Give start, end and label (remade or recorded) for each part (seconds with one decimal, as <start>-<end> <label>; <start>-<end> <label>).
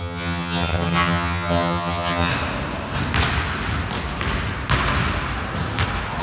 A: 0.0-2.3 remade; 2.3-6.2 recorded